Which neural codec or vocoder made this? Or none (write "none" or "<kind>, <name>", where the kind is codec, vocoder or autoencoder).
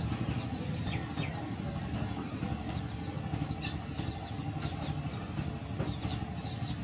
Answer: none